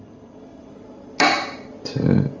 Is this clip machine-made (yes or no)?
no